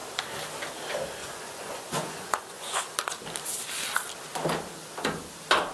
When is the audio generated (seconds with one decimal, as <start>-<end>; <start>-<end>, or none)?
1.2-2.8